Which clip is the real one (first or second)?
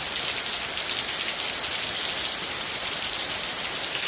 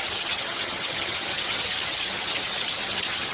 first